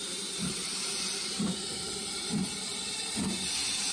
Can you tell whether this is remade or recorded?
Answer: remade